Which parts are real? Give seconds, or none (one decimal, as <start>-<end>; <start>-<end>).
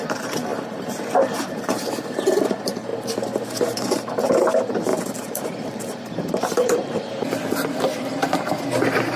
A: 2.9-3.4